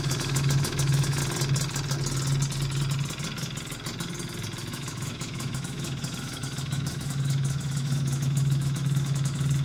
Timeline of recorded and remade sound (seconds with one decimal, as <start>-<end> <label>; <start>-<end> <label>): 0.0-1.2 remade; 1.2-4.7 recorded; 4.7-9.6 remade